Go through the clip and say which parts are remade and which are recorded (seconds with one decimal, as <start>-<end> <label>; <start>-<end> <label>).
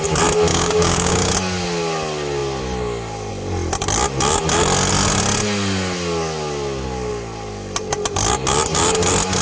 0.0-0.5 recorded; 0.5-1.3 remade; 1.3-9.4 recorded